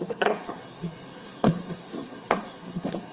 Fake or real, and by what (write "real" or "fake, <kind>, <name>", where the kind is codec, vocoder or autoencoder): fake, codec, SNAC